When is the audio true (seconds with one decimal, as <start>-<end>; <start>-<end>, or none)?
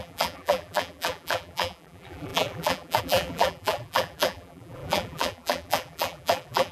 none